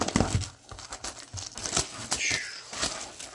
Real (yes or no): yes